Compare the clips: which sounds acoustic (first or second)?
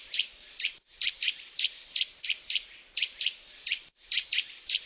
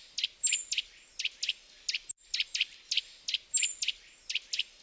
second